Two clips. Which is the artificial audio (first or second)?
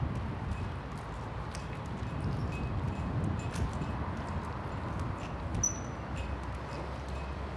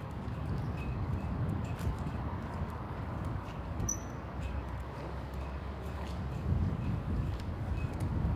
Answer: second